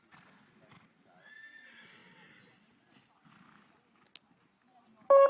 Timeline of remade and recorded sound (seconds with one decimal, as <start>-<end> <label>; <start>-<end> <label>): 0.0-5.3 recorded

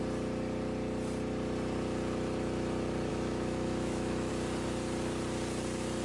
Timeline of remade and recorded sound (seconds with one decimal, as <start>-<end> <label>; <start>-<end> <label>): 0.0-3.1 recorded; 3.1-4.3 remade; 4.3-6.0 recorded

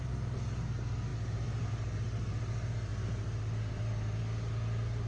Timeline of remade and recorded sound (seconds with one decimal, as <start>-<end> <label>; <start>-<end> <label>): 0.0-5.1 recorded

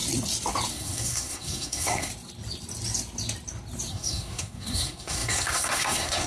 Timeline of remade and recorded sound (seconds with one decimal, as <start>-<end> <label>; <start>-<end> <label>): 0.0-0.7 recorded; 0.7-2.1 remade; 2.1-3.9 recorded; 3.9-6.3 remade

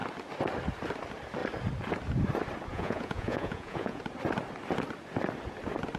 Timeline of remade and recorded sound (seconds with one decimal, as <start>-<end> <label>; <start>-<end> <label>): 0.0-2.7 recorded; 2.7-4.0 remade; 4.0-6.0 recorded

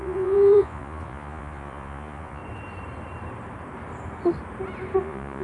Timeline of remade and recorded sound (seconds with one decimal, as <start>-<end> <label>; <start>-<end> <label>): 0.0-2.4 remade; 2.4-5.0 recorded; 5.0-5.4 remade